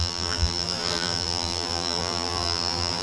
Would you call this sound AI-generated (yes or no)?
yes